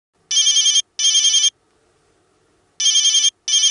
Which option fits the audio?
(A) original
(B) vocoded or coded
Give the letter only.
A